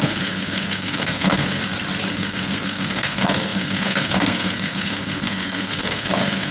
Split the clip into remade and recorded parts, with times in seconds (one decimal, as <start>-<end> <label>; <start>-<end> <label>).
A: 0.0-1.6 remade; 1.6-2.1 recorded; 2.1-6.5 remade